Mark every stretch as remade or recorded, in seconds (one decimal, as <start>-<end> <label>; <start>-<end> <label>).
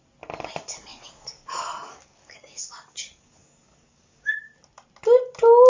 0.0-0.9 recorded; 0.9-4.3 remade; 4.3-5.7 recorded